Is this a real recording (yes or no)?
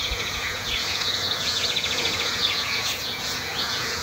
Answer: no